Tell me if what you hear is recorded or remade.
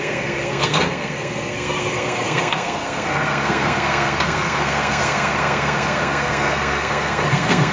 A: remade